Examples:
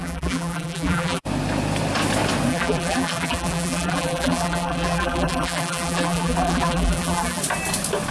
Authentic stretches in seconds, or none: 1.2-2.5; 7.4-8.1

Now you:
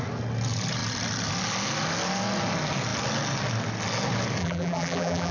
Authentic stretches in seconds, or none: 0.0-4.4

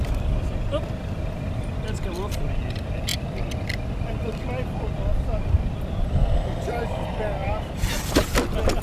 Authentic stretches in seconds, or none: 0.0-7.4; 8.3-8.8

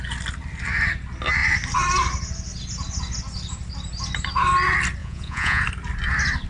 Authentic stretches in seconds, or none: 0.0-5.0; 5.6-6.5

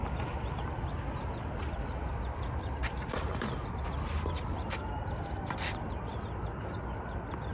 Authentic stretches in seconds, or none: 0.0-2.8; 3.3-7.5